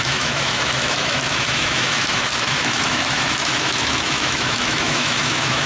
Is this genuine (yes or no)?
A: no